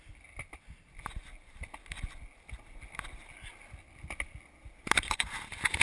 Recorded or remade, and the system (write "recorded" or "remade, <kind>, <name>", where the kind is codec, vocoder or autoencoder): recorded